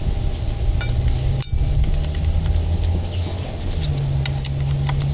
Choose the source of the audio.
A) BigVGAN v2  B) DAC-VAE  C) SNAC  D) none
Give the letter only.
D